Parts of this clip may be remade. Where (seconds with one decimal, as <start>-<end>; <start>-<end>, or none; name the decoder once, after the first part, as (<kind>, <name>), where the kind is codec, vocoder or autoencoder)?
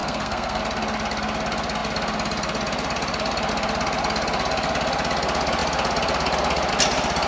0.0-0.6 (codec, SNAC)